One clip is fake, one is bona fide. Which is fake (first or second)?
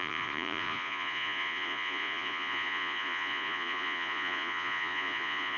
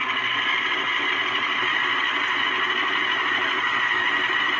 first